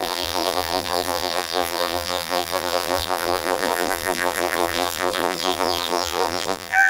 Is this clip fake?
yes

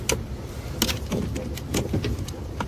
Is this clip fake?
no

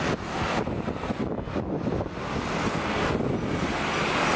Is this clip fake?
no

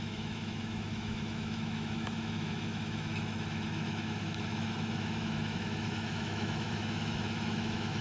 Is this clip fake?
yes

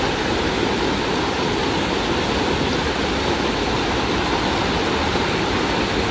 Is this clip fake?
no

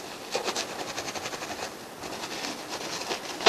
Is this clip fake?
no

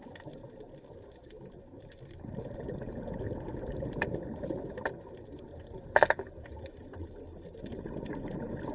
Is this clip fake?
no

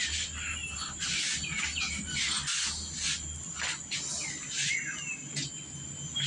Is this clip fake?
no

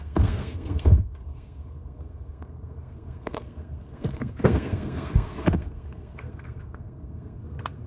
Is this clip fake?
yes